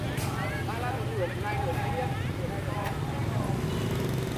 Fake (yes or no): no